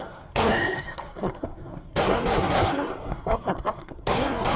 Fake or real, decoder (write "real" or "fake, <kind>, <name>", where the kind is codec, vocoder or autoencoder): fake, codec, SNAC